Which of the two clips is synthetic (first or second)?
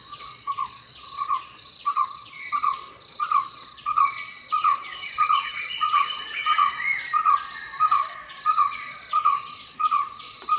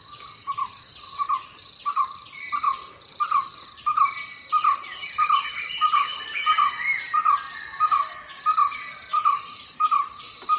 first